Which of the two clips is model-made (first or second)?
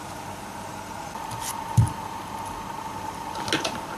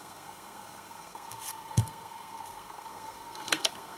second